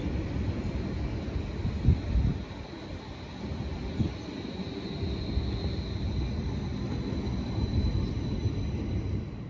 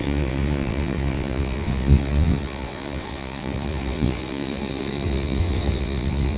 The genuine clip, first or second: first